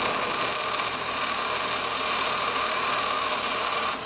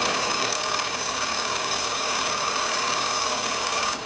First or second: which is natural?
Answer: first